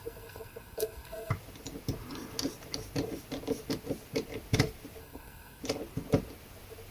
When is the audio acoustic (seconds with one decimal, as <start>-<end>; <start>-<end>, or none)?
1.3-5.0; 5.6-6.9